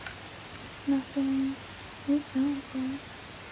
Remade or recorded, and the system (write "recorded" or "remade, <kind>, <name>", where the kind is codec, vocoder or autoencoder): recorded